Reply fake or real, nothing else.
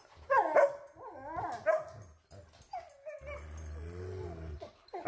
real